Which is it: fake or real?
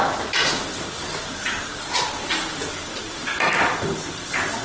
real